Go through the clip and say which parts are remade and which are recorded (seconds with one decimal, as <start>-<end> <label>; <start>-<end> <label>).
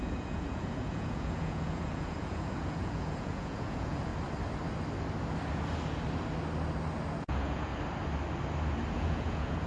0.0-4.1 remade; 4.1-7.2 recorded; 7.2-7.7 remade; 7.7-8.9 recorded; 8.9-9.7 remade